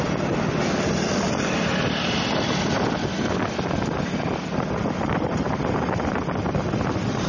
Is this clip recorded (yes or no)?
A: no